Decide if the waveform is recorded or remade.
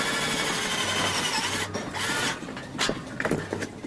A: recorded